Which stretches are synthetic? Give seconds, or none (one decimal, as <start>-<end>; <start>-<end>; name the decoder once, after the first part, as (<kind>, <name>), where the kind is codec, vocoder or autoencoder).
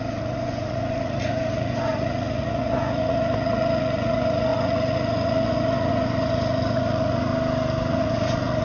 0.0-7.3 (vocoder, Vocos); 7.9-8.6